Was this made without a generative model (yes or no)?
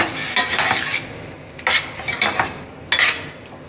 yes